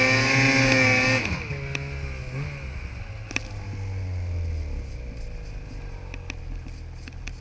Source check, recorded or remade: recorded